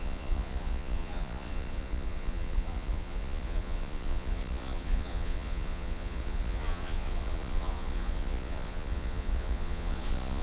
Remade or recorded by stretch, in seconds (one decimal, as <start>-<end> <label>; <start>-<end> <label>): 0.0-10.4 remade